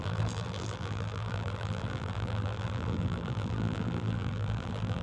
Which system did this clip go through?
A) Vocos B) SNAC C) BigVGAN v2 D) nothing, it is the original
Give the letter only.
C